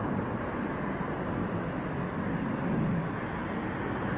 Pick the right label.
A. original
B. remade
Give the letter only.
A